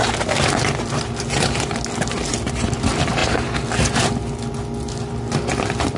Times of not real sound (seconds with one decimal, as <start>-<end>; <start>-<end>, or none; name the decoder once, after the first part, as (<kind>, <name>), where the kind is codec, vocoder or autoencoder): none